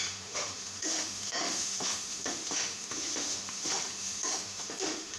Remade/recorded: remade